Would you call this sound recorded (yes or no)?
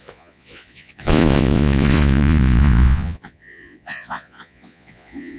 no